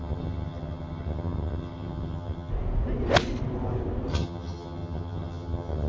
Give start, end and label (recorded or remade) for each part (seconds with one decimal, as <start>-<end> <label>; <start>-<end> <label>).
0.0-2.5 remade; 2.5-4.1 recorded; 4.1-5.9 remade